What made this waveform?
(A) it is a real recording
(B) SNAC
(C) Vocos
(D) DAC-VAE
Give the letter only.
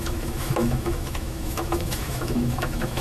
D